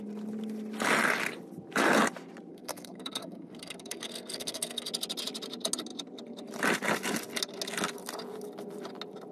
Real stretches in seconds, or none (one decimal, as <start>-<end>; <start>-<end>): 0.0-2.5; 4.9-9.3

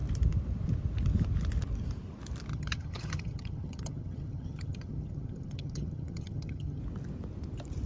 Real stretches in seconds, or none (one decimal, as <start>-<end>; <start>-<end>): 0.0-2.5; 6.8-7.9

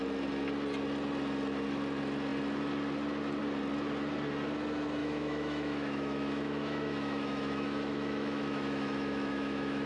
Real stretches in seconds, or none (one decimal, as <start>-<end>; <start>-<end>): 0.0-5.0

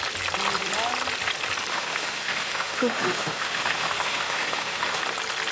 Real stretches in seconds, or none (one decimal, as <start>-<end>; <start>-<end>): 0.0-1.7; 5.0-5.5

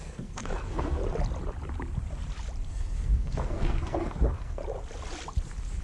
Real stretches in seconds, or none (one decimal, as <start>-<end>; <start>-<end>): 1.0-2.7; 4.6-5.8